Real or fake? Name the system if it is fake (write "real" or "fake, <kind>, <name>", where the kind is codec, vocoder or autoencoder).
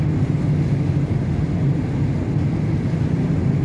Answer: real